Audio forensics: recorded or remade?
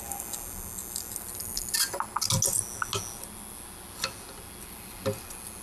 recorded